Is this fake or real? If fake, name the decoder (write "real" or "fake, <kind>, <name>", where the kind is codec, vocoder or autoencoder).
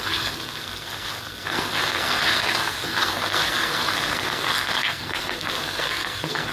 fake, codec, SNAC